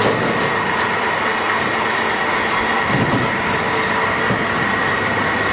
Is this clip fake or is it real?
real